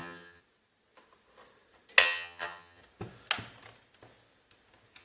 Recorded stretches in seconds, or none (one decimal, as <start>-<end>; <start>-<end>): 0.4-2.0; 2.8-5.0